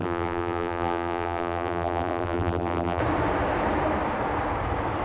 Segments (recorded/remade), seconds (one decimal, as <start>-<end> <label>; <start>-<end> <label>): 0.0-3.0 remade; 3.0-5.0 recorded